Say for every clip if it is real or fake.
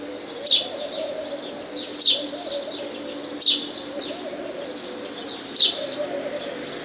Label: real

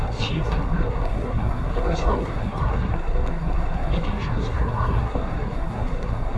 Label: fake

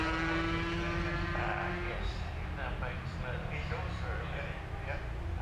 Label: real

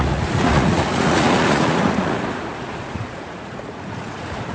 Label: fake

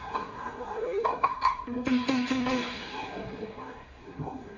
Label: fake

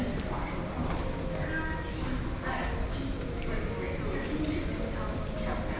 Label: real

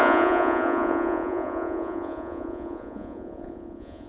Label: fake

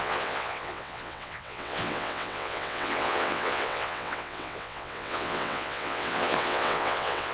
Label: fake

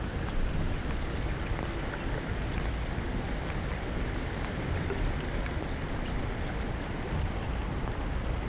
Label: real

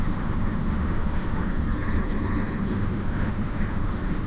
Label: fake